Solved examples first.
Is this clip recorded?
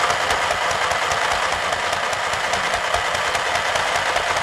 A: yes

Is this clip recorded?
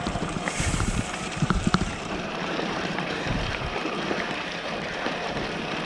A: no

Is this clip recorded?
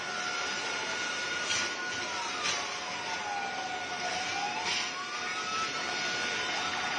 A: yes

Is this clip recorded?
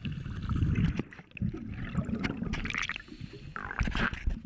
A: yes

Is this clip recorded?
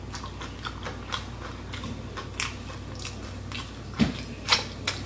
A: yes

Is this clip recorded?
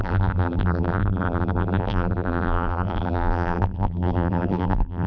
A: no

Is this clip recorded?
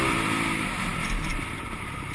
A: no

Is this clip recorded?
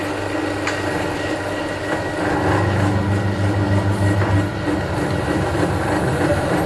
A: yes